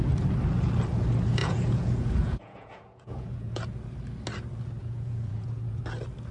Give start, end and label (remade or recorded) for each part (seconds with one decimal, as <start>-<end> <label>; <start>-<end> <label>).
0.0-1.4 recorded; 1.4-3.6 remade; 3.6-4.8 recorded; 4.8-5.8 remade; 5.8-6.3 recorded